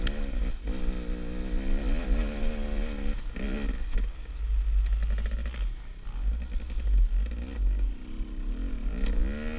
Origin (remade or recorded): recorded